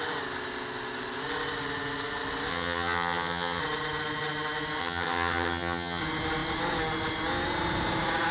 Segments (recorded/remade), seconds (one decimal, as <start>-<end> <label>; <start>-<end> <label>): 0.0-2.5 recorded; 2.5-3.6 remade; 3.6-4.8 recorded; 4.8-6.0 remade; 6.0-8.3 recorded